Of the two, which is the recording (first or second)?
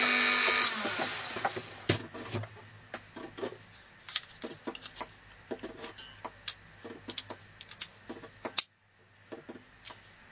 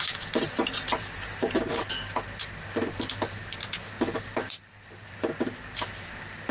first